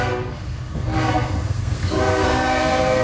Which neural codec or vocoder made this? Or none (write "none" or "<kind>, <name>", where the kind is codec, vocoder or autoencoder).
codec, SNAC